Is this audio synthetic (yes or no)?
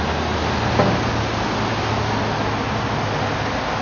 no